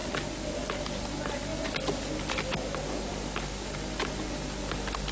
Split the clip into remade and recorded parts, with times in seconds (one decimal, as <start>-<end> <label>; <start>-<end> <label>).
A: 0.0-5.1 recorded